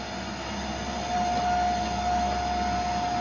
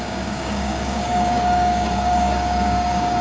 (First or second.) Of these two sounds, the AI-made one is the second